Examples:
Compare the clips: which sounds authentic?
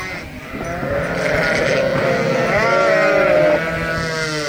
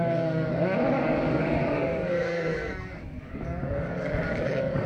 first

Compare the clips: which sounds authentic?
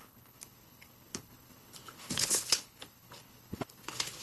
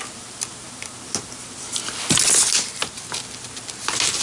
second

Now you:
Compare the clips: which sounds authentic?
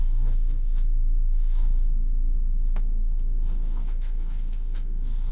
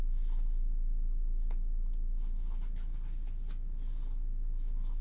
second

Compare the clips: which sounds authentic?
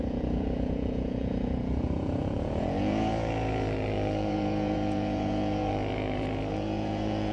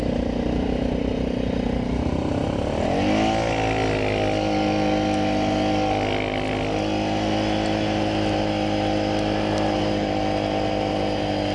second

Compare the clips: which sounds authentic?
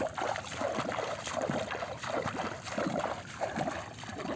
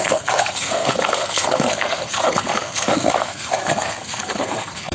first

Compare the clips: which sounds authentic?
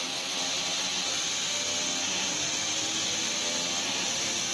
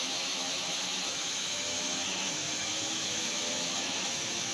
first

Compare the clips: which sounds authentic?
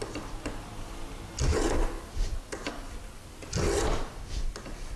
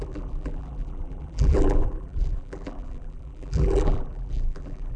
first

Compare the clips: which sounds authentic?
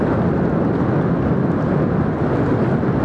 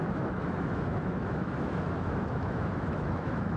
first